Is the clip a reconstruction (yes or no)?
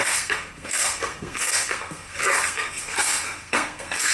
yes